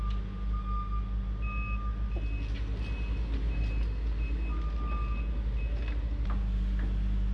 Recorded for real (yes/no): yes